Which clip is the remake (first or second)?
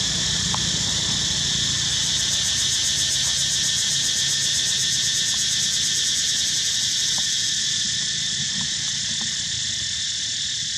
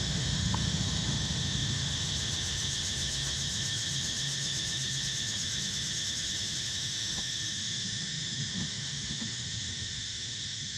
second